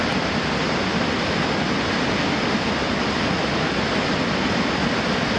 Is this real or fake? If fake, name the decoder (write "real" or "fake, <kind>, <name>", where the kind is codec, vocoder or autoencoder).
real